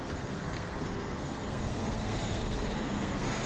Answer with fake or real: fake